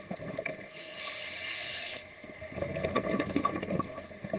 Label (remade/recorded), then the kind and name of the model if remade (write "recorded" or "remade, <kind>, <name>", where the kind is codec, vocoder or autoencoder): remade, codec, SNAC